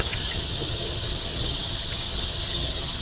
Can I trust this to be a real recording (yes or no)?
no